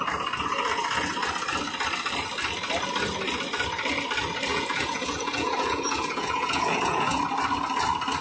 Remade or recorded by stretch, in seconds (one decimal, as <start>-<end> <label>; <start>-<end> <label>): 0.0-4.5 recorded; 4.5-7.2 remade; 7.2-8.2 recorded